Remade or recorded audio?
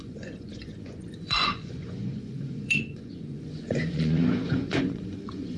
remade